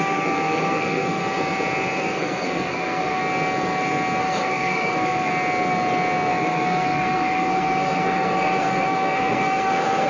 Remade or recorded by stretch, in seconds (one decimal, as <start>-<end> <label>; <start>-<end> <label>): 0.0-1.2 remade; 1.2-2.0 recorded; 2.0-3.2 remade; 3.2-4.2 recorded; 4.2-5.3 remade; 5.3-6.3 recorded; 6.3-10.1 remade